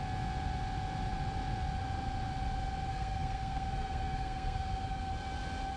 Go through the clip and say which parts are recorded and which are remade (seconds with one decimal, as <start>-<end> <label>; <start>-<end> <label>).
0.0-2.9 recorded; 2.9-5.1 remade; 5.1-5.8 recorded